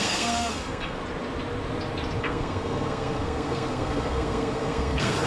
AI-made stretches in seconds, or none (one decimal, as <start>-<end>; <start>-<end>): 0.0-1.0; 2.2-5.3